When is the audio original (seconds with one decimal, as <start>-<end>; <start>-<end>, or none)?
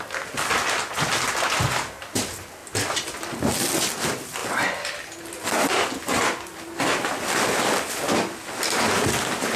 0.0-9.6